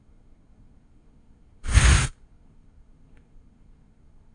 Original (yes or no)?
no